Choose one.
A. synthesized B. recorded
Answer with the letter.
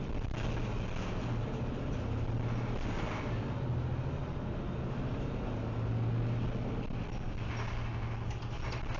B